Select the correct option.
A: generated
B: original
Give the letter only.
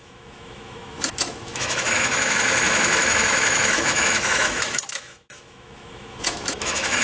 A